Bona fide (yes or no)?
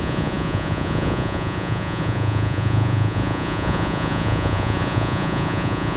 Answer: no